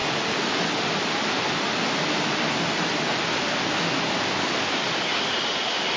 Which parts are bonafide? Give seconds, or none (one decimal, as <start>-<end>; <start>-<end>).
3.6-6.0